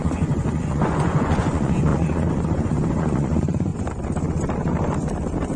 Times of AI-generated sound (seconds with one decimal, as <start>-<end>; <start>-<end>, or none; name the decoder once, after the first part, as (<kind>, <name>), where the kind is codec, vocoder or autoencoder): 0.0-3.7 (vocoder, Vocos)